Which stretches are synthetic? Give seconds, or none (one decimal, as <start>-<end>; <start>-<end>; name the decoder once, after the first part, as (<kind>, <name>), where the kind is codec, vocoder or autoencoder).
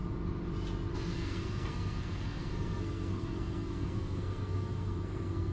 0.9-5.5 (codec, SNAC)